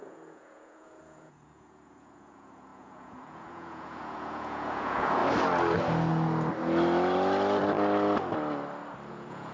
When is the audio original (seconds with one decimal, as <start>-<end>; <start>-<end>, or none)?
5.2-9.1